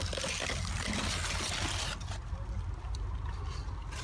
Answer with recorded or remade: recorded